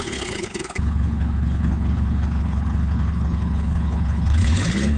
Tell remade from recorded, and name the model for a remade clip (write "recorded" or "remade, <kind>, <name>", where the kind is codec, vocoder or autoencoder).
remade, codec, HILCodec